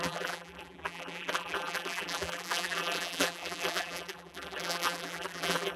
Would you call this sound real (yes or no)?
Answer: no